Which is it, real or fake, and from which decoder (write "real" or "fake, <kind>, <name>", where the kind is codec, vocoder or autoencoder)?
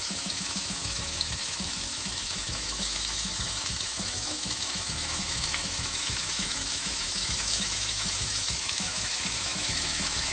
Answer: fake, autoencoder, DAC-VAE